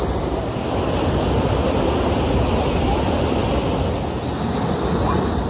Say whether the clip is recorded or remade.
recorded